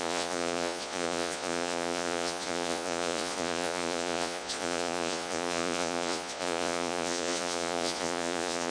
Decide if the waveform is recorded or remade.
remade